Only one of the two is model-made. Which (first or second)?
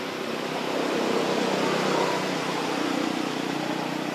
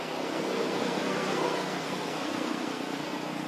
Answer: second